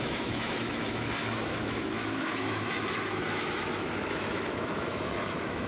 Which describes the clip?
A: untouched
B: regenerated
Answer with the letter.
B